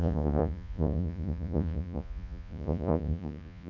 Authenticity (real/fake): fake